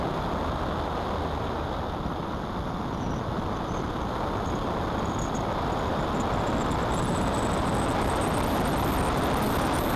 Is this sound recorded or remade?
recorded